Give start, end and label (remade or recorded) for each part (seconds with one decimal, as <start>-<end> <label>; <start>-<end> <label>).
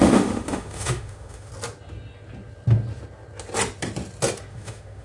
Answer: 0.0-1.5 remade; 1.5-4.5 recorded; 4.5-5.0 remade